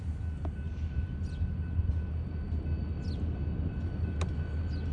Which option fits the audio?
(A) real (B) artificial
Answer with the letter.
A